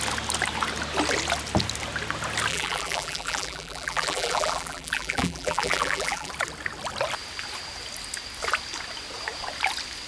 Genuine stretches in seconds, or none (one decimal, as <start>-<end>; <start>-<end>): 0.0-2.5; 6.3-10.1